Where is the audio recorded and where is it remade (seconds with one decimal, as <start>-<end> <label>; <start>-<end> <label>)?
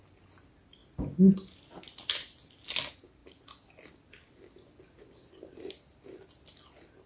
0.0-7.1 recorded